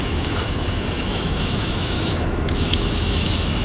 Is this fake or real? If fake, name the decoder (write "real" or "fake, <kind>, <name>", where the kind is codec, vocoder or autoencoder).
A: fake, autoencoder, DAC-VAE